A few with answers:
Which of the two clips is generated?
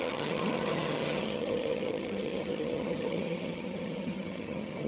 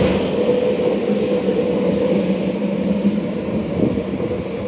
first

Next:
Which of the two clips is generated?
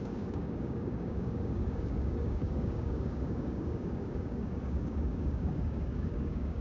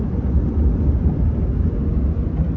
first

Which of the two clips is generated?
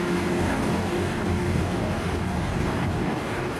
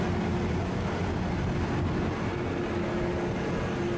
first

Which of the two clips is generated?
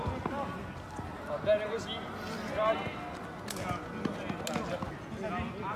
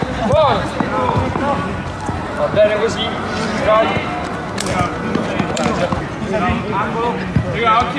second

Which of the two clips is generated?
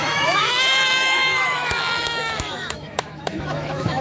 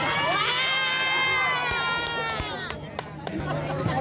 first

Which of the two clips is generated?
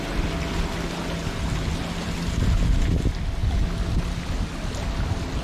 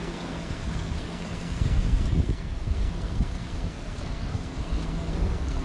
second